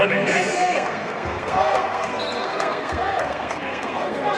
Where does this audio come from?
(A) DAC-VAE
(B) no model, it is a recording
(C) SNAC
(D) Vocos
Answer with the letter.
C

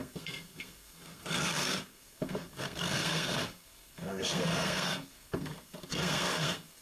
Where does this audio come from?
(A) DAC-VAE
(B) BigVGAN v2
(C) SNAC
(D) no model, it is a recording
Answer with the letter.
C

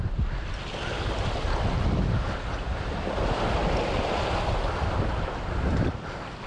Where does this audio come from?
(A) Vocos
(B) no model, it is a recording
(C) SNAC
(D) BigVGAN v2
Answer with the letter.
B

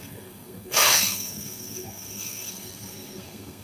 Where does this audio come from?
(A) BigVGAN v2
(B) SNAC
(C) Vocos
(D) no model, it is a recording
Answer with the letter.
B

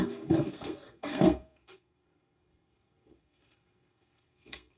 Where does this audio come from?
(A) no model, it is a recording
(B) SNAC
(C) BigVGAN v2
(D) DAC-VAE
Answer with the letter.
B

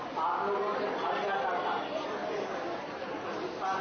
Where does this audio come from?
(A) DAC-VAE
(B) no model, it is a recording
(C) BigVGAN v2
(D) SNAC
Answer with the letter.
B